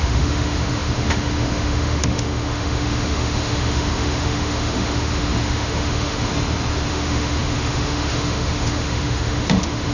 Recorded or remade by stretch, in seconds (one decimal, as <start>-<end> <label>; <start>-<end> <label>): 0.0-6.3 remade; 6.3-6.9 recorded; 6.9-9.9 remade